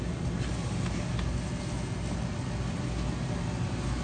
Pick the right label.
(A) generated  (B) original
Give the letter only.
B